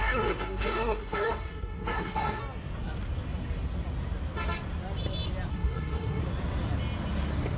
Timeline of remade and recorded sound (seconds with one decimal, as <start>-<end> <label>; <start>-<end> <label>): 0.0-2.4 remade; 2.4-5.5 recorded; 5.5-6.2 remade; 6.2-7.6 recorded